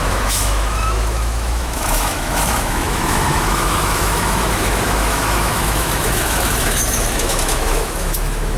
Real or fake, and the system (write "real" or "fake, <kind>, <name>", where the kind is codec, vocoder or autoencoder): fake, autoencoder, DAC-VAE